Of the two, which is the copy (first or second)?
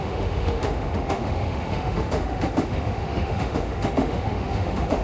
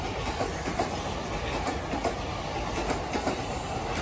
first